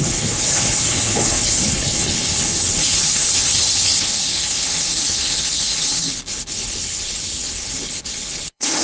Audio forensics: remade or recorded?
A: remade